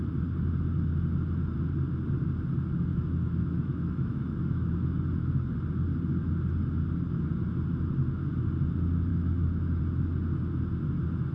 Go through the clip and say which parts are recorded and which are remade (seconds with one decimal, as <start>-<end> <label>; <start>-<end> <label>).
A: 0.0-2.9 recorded; 2.9-4.7 remade; 4.7-9.1 recorded; 9.1-9.8 remade; 9.8-11.3 recorded

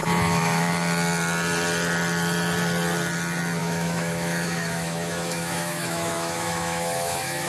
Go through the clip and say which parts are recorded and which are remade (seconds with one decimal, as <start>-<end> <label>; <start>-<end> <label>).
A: 0.0-0.7 remade; 0.7-3.6 recorded; 3.6-7.5 remade